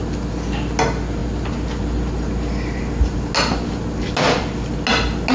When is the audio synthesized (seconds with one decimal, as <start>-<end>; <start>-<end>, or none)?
none